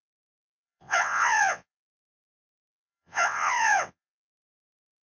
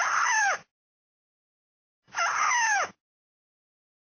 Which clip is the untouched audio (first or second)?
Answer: second